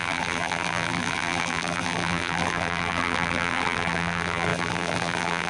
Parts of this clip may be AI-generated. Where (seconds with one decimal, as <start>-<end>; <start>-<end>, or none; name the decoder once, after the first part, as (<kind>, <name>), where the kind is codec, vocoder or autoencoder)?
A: 0.0-5.5 (vocoder, BigVGAN v2)

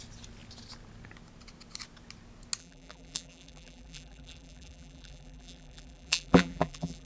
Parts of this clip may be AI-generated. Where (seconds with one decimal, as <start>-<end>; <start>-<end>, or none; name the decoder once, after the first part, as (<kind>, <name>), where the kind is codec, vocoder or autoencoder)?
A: 2.6-7.1 (vocoder, BigVGAN v2)